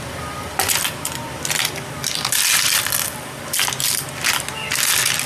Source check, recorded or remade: recorded